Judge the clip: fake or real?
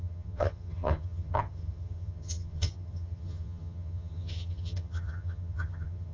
fake